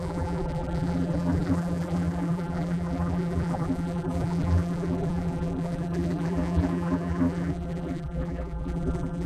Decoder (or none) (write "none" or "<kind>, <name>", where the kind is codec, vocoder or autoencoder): vocoder, BigVGAN v2